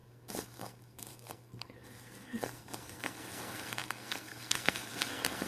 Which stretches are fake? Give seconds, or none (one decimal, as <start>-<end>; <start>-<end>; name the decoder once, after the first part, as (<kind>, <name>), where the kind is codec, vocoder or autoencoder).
0.0-5.5 (codec, SNAC)